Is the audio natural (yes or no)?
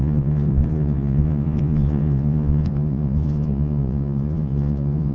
no